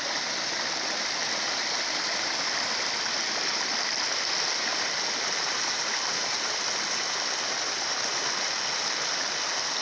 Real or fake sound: real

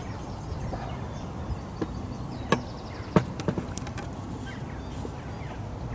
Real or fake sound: real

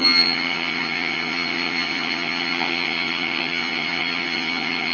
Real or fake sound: fake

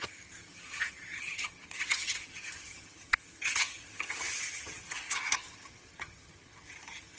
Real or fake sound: fake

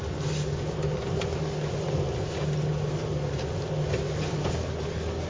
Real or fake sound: real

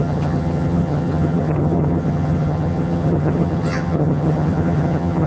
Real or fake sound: fake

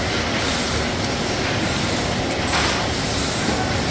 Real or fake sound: real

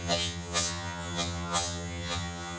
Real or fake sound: fake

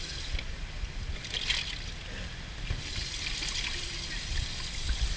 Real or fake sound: real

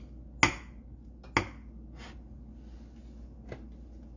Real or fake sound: real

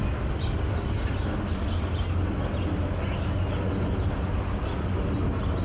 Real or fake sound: real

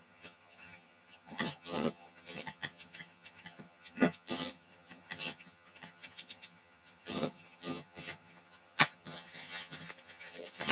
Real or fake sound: fake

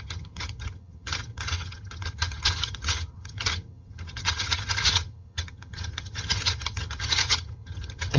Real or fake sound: fake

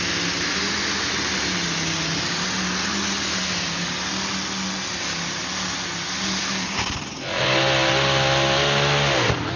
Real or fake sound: real